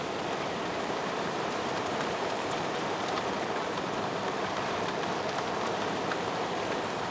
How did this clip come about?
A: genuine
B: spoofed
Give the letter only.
B